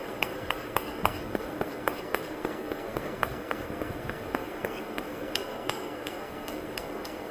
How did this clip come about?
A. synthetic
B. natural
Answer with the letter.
A